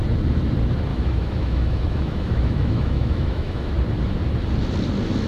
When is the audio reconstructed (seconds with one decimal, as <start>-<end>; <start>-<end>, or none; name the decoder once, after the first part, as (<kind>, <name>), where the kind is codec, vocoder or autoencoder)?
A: 0.9-3.7 (autoencoder, DAC-VAE)